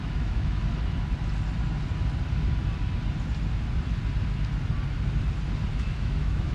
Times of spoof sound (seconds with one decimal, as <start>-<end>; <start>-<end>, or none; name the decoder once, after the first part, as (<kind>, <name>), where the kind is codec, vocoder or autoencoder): 0.0-0.6 (autoencoder, DAC-VAE); 5.7-6.5